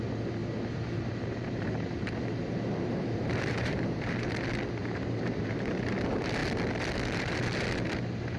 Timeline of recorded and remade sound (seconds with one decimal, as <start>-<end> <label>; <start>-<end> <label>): 0.0-0.4 recorded; 0.4-4.3 remade; 4.3-4.8 recorded; 4.8-5.8 remade; 5.8-8.4 recorded